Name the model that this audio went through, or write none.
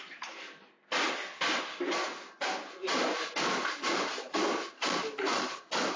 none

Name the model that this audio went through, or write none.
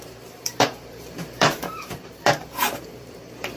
vocoder, BigVGAN v2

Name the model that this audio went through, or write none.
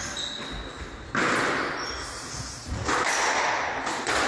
none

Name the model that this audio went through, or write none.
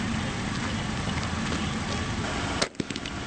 none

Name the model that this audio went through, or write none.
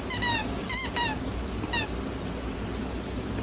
none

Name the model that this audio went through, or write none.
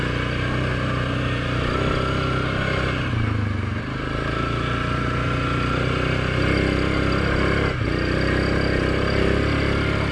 none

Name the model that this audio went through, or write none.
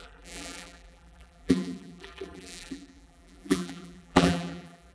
vocoder, BigVGAN v2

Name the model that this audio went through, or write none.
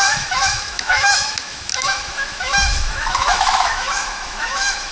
autoencoder, DAC-VAE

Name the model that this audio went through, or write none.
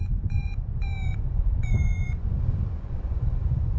vocoder, Vocos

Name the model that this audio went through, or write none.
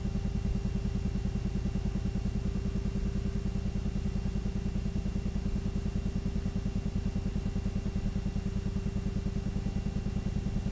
none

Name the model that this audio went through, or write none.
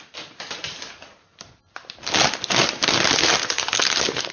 none